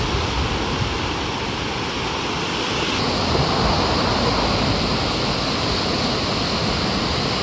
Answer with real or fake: real